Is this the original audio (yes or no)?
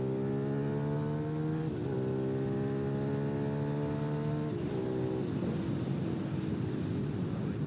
yes